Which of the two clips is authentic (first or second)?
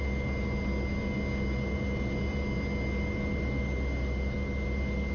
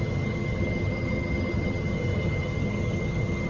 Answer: first